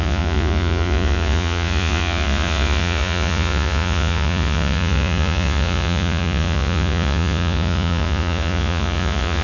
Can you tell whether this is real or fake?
fake